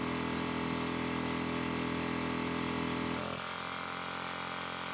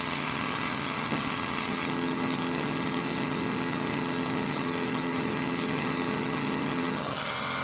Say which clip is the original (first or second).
first